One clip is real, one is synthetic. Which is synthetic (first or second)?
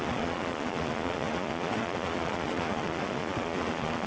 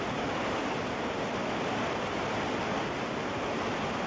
first